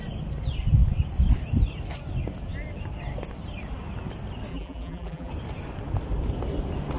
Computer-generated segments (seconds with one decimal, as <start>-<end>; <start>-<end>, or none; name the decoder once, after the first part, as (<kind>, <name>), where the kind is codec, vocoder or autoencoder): 4.5-5.3 (vocoder, BigVGAN v2)